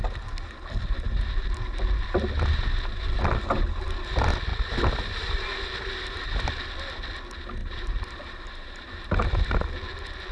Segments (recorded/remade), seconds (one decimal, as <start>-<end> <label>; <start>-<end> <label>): 0.0-7.6 recorded; 7.6-9.2 remade; 9.2-10.3 recorded